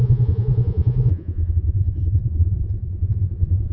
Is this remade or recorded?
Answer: remade